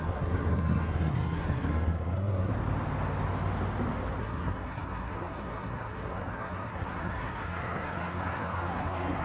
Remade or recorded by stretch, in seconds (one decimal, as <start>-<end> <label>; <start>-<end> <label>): 0.0-2.5 remade; 2.5-4.2 recorded; 4.2-9.2 remade